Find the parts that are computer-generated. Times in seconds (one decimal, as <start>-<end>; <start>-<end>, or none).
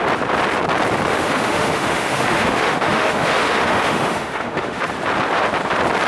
1.1-4.8